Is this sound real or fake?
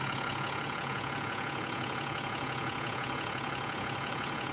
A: fake